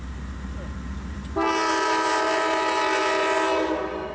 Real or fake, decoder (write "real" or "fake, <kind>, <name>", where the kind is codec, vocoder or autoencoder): real